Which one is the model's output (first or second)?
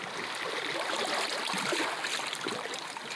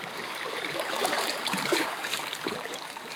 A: second